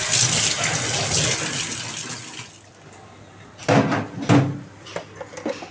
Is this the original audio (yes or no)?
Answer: yes